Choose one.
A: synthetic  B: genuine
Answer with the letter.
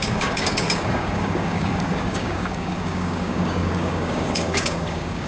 A